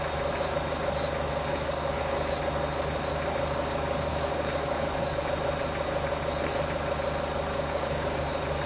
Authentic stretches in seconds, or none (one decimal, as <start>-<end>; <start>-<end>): 0.0-1.5; 2.4-4.1; 5.2-7.5; 8.2-8.7

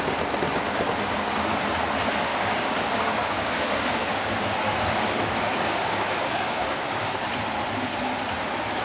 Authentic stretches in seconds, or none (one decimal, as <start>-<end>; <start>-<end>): 0.0-2.3; 7.2-8.8

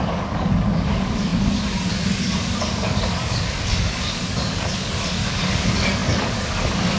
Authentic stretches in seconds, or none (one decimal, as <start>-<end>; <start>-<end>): none

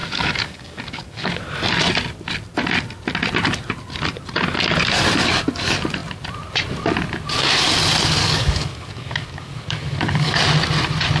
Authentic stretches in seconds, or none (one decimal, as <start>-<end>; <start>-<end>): 1.4-8.2; 10.4-11.2